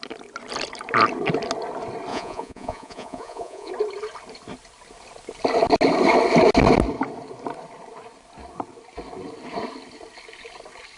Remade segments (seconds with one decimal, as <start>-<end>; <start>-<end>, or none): 2.1-3.7